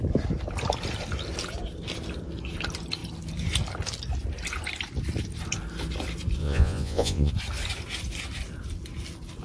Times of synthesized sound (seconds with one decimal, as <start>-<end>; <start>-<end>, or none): 6.4-7.3